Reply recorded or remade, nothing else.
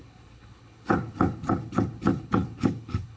remade